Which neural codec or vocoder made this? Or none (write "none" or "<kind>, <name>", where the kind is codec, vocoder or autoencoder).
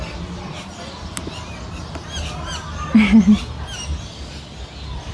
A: none